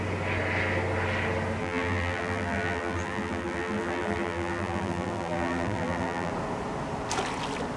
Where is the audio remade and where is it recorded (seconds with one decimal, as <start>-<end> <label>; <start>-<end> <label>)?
0.0-1.6 recorded; 1.6-6.3 remade; 6.3-7.8 recorded